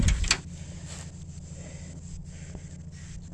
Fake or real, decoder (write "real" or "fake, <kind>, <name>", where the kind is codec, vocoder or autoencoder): real